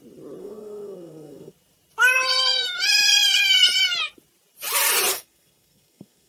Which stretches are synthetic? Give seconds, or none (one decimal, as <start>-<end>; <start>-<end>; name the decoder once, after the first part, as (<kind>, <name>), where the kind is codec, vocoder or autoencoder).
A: 0.4-1.5 (codec, SNAC); 5.1-6.3